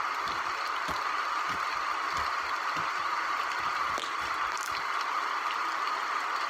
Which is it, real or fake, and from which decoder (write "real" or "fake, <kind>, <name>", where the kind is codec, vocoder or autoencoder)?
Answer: real